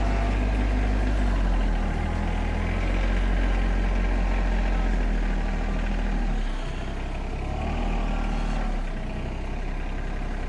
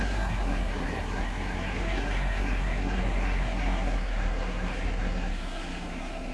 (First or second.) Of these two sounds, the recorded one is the first